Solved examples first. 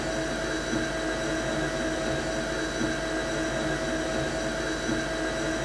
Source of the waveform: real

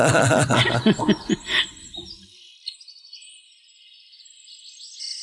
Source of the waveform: real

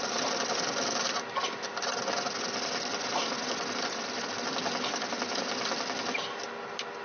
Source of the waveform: real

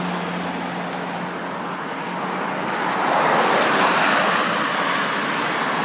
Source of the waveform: real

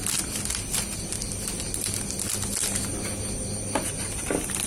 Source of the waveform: real